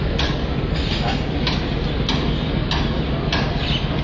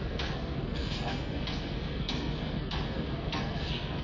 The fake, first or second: second